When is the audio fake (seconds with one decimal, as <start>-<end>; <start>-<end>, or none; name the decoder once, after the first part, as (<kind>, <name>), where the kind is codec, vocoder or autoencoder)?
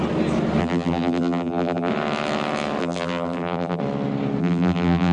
0.6-1.9 (vocoder, BigVGAN v2); 2.8-3.8; 4.4-5.1